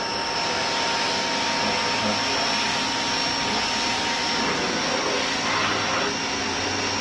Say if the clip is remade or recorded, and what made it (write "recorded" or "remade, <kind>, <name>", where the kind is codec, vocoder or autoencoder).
recorded